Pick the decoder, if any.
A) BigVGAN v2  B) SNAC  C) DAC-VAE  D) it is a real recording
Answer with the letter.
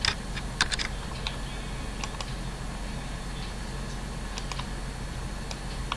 D